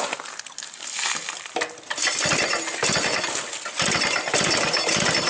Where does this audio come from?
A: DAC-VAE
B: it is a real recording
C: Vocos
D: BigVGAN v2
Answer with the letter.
B